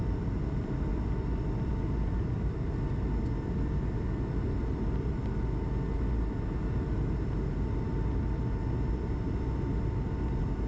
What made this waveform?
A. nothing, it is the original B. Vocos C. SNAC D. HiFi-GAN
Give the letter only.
A